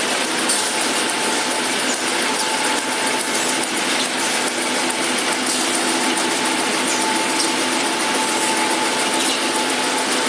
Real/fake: real